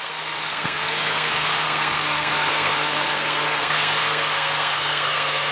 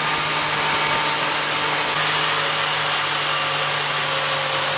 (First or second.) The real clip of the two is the second